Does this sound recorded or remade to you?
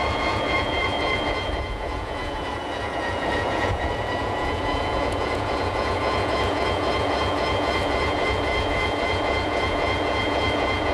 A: remade